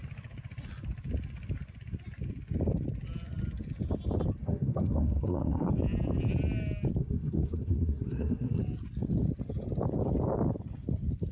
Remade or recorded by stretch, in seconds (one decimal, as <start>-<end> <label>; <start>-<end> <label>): 0.0-4.4 recorded; 4.4-5.7 remade; 5.7-7.0 recorded; 7.0-8.6 remade; 8.6-11.3 recorded